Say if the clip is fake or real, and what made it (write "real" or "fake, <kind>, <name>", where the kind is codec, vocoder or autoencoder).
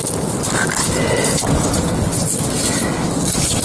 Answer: real